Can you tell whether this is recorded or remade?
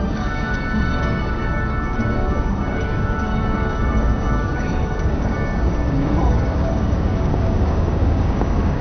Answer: remade